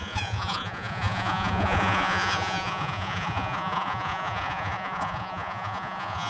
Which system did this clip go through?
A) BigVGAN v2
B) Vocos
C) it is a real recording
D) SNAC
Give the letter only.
B